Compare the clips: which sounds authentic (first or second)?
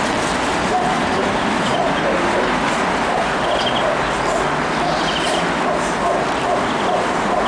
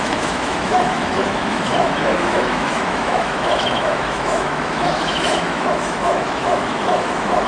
first